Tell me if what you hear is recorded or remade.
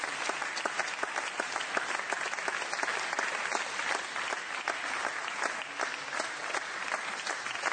recorded